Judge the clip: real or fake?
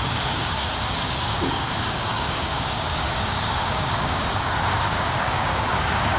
fake